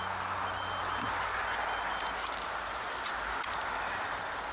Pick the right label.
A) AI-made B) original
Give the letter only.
B